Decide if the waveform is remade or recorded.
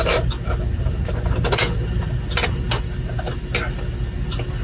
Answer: recorded